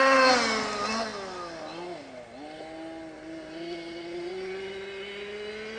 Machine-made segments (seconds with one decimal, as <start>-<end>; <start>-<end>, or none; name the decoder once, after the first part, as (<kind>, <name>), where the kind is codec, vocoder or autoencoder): none

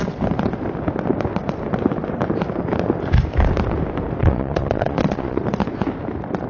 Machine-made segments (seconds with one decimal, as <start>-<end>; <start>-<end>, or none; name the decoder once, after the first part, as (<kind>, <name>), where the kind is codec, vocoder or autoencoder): 4.2-5.4 (vocoder, Vocos)

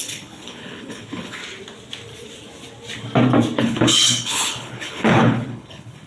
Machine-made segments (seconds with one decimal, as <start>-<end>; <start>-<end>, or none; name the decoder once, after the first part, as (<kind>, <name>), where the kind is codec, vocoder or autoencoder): 0.0-1.4 (codec, HILCodec); 3.6-6.1

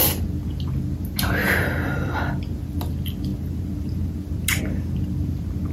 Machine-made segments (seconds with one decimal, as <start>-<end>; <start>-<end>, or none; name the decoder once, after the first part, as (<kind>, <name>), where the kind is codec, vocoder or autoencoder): 1.4-2.3 (vocoder, BigVGAN v2)

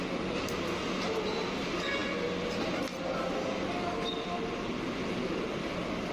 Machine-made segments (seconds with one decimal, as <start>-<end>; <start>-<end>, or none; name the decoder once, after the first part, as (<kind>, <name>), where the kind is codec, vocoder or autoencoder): none

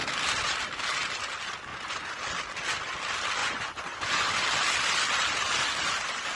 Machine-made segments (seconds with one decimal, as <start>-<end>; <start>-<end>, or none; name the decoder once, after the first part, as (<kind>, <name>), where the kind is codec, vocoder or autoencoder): 1.7-2.2 (vocoder, Vocos); 3.4-4.3

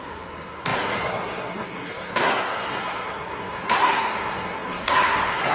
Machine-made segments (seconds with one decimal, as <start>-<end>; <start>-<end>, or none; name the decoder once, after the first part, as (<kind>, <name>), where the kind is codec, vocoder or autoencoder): 0.0-5.5 (codec, SNAC)

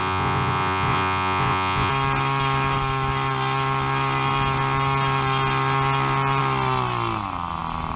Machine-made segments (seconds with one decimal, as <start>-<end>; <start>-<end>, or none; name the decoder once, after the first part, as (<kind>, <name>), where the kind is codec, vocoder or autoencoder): 0.0-1.9 (vocoder, Vocos)